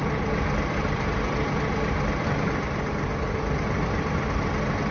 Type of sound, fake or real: real